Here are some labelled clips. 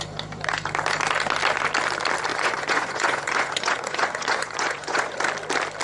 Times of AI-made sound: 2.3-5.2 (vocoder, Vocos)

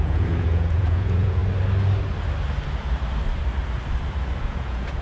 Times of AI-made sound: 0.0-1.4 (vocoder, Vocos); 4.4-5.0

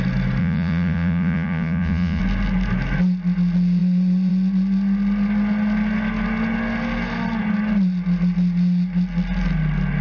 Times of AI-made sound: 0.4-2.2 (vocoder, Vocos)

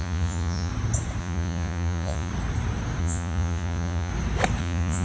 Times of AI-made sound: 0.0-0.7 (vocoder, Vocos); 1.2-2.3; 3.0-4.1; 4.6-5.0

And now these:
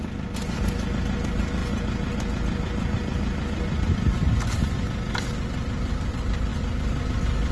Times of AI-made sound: none

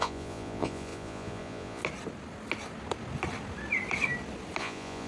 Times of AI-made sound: 0.0-1.8 (vocoder, Vocos); 4.6-5.1

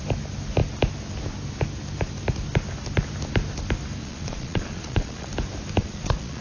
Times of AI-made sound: 4.0-5.3 (vocoder, Vocos); 5.8-6.4